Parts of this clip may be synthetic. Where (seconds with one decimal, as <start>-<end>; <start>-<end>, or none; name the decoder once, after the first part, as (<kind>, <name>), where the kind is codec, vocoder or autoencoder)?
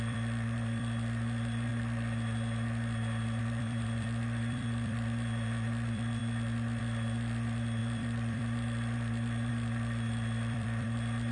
0.0-1.7 (vocoder, BigVGAN v2); 3.4-6.2; 6.8-11.3